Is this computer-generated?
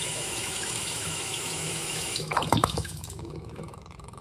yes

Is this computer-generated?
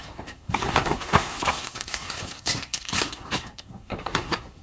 yes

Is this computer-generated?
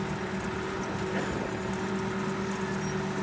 no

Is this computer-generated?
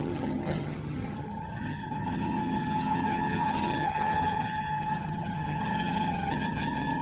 yes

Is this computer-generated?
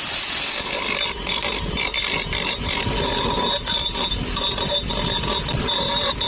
no